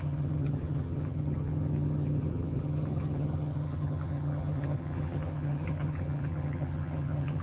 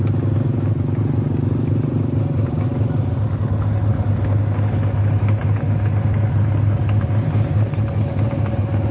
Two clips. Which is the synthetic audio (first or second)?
first